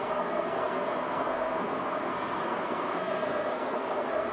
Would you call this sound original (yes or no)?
no